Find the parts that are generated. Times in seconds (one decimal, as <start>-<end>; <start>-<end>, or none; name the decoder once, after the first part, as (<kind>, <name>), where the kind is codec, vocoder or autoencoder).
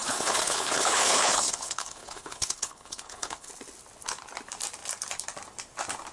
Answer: 0.0-3.5 (codec, HILCodec)